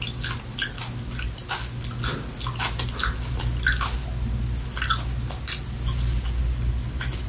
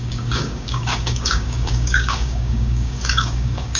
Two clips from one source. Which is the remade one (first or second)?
second